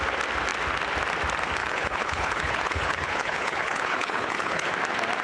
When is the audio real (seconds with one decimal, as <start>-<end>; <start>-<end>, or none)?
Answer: 0.0-1.6; 4.7-5.2